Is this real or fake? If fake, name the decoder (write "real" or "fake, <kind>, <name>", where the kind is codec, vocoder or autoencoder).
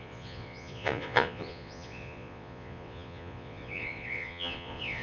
fake, vocoder, Vocos